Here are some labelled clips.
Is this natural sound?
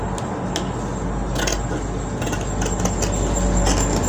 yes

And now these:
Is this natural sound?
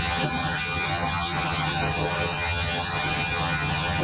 no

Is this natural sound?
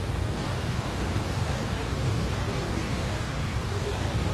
no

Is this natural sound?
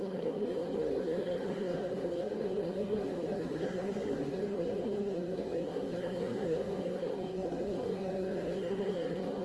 no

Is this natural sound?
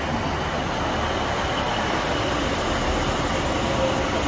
yes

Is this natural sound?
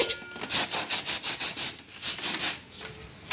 yes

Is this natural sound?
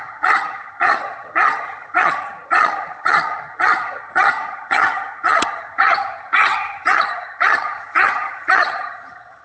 no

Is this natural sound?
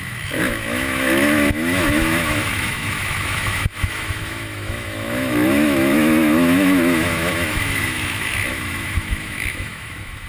no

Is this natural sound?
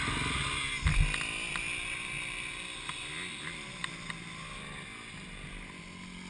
yes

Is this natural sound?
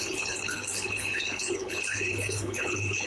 no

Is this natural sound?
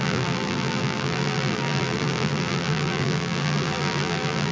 no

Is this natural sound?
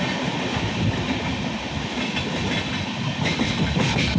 yes